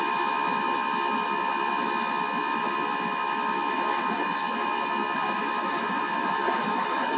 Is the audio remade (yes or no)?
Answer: yes